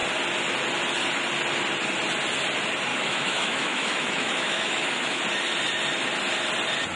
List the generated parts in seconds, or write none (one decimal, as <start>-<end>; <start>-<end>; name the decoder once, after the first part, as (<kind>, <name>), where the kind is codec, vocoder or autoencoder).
2.9-5.2 (autoencoder, DAC-VAE)